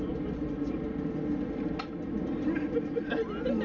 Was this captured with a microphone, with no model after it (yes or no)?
yes